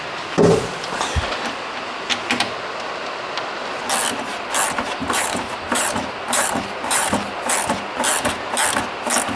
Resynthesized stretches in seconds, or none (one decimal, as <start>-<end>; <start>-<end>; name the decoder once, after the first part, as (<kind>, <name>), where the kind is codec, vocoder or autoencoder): 5.0-7.5 (vocoder, BigVGAN v2)